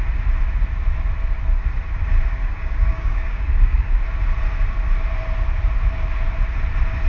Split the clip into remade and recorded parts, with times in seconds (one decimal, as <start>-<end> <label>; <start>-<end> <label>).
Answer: 0.0-2.4 recorded; 2.4-3.9 remade; 3.9-7.1 recorded

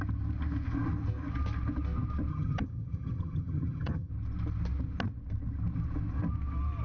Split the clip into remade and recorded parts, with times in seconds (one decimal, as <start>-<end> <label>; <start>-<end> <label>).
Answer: 0.0-2.3 recorded; 2.3-4.1 remade; 4.1-6.8 recorded

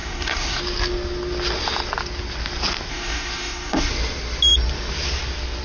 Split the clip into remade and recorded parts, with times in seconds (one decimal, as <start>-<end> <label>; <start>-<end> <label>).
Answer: 0.0-0.6 remade; 0.6-2.9 recorded; 2.9-3.9 remade; 3.9-5.6 recorded